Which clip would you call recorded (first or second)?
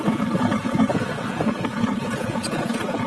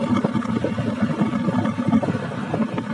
second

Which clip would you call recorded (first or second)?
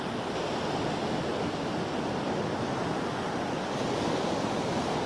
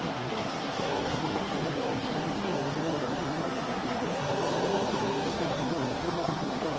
first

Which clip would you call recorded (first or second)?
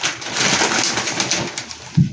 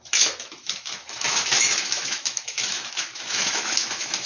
first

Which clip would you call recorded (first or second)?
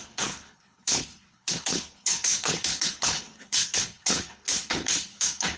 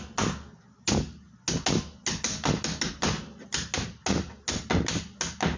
second